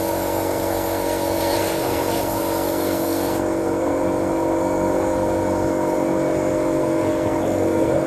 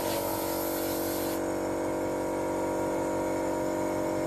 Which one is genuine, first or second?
second